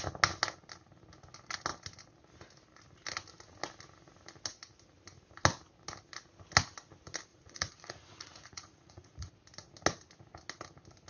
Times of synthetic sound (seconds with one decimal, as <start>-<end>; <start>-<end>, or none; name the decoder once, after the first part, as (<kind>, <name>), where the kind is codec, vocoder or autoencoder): 7.3-9.3 (vocoder, Vocos)